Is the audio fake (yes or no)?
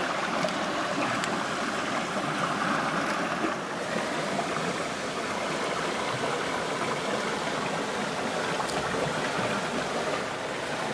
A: no